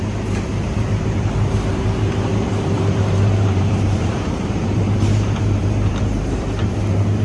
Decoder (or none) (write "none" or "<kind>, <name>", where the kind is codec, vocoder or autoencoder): vocoder, BigVGAN v2